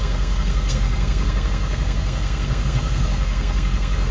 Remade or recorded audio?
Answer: remade